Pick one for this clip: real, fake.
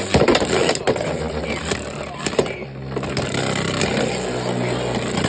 real